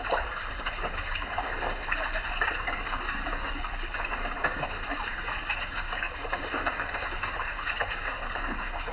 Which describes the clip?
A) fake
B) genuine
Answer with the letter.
A